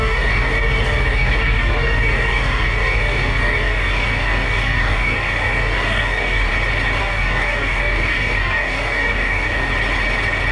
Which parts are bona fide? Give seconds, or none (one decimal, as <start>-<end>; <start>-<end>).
6.5-7.0; 9.7-10.5